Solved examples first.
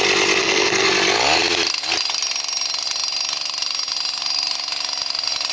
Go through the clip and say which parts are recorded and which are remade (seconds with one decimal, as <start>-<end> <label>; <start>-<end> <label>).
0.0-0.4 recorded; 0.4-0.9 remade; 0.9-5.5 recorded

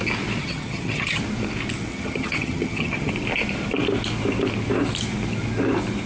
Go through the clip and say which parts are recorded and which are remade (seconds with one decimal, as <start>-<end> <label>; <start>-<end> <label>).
0.0-0.4 recorded; 0.4-1.2 remade; 1.2-1.9 recorded; 1.9-3.1 remade; 3.1-6.1 recorded

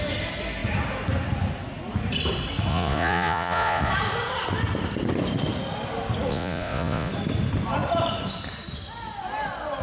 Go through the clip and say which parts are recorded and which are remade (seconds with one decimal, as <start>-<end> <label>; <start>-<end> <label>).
0.0-2.7 recorded; 2.7-3.9 remade; 3.9-6.3 recorded; 6.3-7.1 remade; 7.1-9.8 recorded